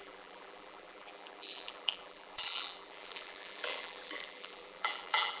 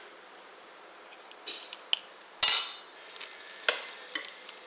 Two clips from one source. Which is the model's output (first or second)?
first